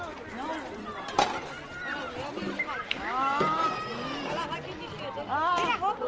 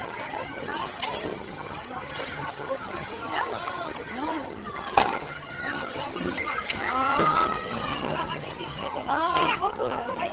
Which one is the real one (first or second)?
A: first